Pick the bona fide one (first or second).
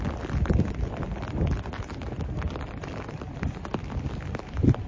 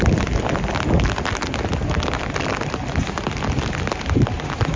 second